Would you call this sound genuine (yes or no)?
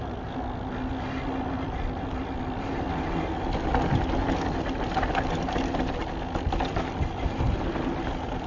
yes